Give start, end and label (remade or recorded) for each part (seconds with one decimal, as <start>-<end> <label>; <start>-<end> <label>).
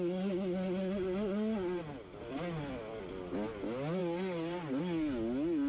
0.0-5.7 recorded